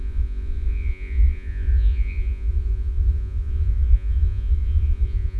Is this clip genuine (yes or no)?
no